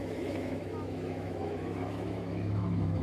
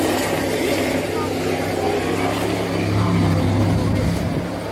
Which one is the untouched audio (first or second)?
second